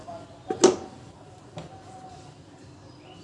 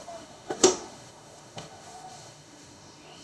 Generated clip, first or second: second